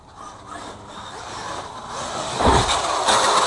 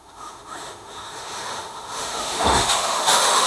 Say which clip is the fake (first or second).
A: second